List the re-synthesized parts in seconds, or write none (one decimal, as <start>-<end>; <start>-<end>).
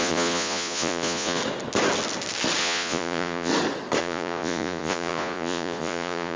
0.0-1.4; 2.6-3.5; 4.0-6.4